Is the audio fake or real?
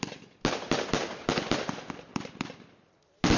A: real